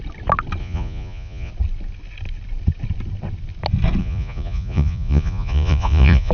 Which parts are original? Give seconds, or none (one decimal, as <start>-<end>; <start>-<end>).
0.0-0.6; 1.5-4.0